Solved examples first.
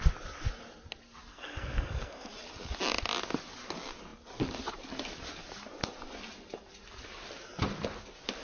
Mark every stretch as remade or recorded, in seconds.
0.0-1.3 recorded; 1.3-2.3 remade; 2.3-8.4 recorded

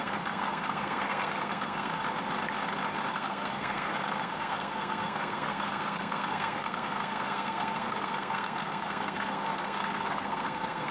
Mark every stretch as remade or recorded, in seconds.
0.0-2.0 remade; 2.0-3.1 recorded; 3.1-10.9 remade

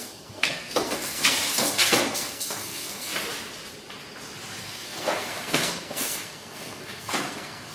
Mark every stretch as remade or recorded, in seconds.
0.0-3.1 remade; 3.1-4.6 recorded; 4.6-7.7 remade

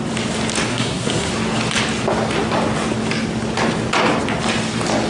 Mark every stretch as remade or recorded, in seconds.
0.0-0.7 recorded; 0.7-1.3 remade; 1.3-5.1 recorded

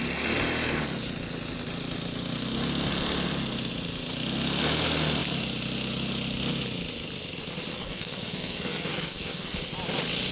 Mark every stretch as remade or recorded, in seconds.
0.0-7.7 recorded; 7.7-9.6 remade; 9.6-10.3 recorded

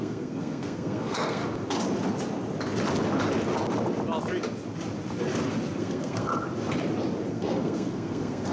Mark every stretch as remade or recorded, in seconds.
0.0-1.4 remade; 1.4-5.8 recorded; 5.8-6.3 remade; 6.3-7.3 recorded; 7.3-8.5 remade

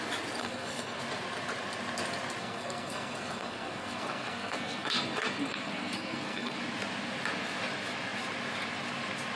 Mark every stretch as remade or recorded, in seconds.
0.0-0.4 recorded; 0.4-1.0 remade; 1.0-2.4 recorded; 2.4-6.6 remade; 6.6-9.4 recorded